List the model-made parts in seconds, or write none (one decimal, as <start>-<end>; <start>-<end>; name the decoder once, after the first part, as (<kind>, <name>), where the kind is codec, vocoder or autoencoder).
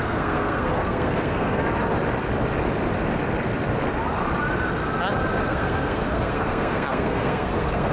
0.0-1.6 (codec, SNAC); 5.5-7.9